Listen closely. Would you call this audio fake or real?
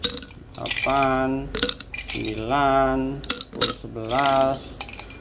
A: real